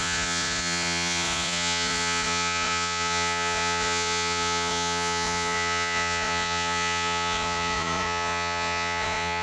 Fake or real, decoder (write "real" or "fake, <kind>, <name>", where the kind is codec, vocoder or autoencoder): fake, vocoder, Vocos